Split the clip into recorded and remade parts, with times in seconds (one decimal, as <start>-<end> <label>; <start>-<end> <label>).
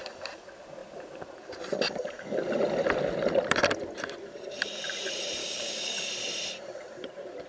0.0-5.4 recorded; 5.4-6.1 remade; 6.1-7.5 recorded